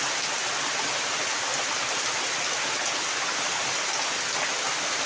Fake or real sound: real